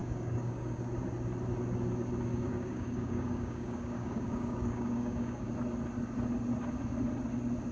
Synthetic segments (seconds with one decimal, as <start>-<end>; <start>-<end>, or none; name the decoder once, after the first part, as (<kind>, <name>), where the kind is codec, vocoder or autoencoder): 0.0-0.8 (codec, DAC); 2.3-5.5